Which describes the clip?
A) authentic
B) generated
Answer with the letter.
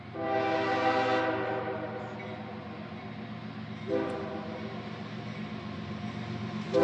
A